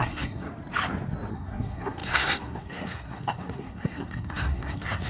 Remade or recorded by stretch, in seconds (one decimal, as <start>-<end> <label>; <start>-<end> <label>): 0.0-0.5 remade; 0.5-1.3 recorded; 1.3-5.1 remade